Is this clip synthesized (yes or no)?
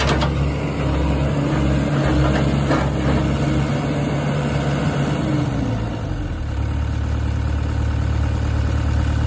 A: no